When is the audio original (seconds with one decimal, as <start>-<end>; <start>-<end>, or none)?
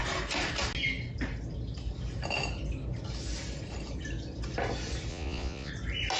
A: 0.0-5.1; 5.7-6.2